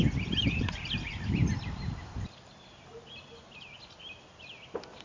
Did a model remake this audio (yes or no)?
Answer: yes